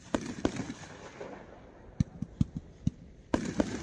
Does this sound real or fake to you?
real